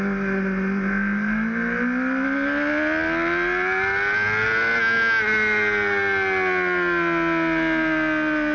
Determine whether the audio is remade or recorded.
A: recorded